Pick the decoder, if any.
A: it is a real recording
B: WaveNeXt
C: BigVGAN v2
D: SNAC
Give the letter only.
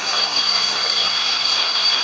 D